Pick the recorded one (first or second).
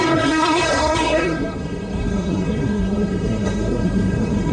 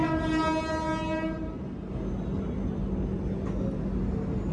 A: second